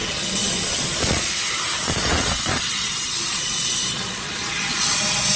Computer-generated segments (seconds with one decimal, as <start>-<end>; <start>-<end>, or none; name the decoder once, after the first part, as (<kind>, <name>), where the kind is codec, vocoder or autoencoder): 0.0-1.3 (vocoder, Vocos); 1.8-5.0